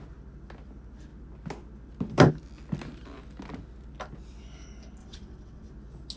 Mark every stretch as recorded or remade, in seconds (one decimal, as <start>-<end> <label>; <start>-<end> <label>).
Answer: 0.0-5.0 recorded; 5.0-5.7 remade; 5.7-6.2 recorded